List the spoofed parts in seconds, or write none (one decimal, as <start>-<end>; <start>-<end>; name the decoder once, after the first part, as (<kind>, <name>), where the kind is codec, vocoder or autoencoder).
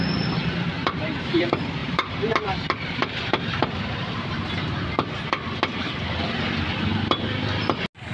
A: 0.8-1.4 (vocoder, BigVGAN v2); 1.8-4.5